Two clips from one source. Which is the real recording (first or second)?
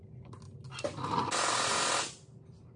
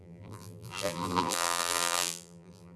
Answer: first